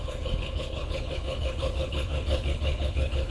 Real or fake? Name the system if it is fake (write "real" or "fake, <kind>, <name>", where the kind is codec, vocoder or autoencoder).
fake, codec, HILCodec